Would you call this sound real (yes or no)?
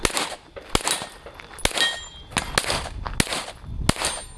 yes